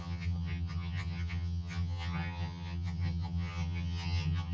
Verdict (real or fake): fake